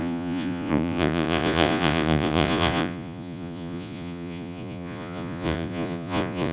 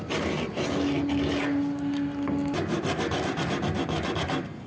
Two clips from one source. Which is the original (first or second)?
second